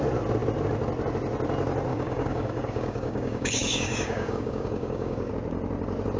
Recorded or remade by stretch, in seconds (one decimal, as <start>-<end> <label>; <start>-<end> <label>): 0.0-1.9 recorded; 1.9-5.3 remade; 5.3-6.2 recorded